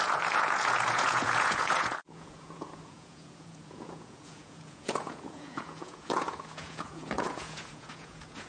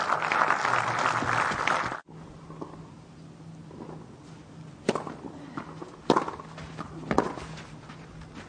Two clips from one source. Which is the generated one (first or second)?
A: first